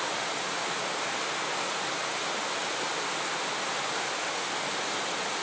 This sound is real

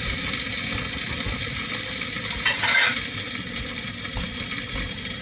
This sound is real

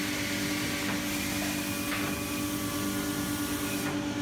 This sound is real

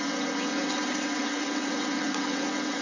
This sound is fake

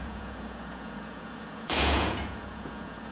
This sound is fake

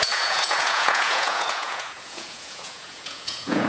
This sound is fake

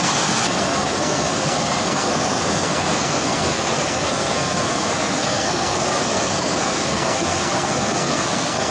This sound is fake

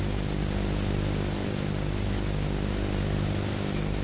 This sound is real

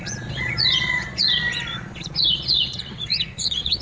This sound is fake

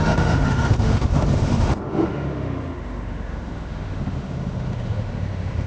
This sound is fake